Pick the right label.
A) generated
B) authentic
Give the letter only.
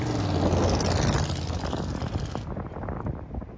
B